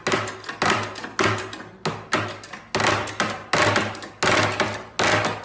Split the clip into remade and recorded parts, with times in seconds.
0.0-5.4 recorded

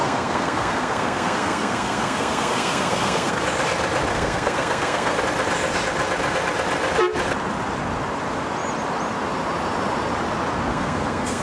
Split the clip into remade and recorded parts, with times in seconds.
0.0-3.4 remade; 3.4-4.1 recorded; 4.1-5.2 remade; 5.2-10.7 recorded; 10.7-11.4 remade